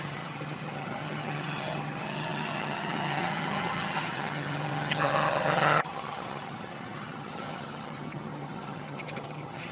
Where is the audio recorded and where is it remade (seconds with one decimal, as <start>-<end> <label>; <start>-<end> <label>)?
0.0-9.7 remade